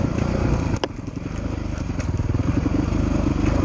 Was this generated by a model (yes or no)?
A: no